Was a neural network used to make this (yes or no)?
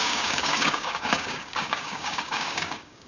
yes